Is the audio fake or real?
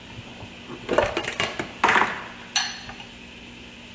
real